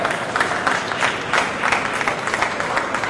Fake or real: real